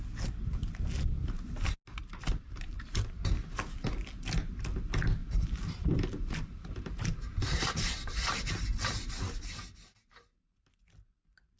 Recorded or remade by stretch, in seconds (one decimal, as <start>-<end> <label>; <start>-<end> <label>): 0.0-2.0 recorded; 2.0-3.9 remade; 3.9-5.2 recorded; 5.2-8.5 remade; 8.5-11.6 recorded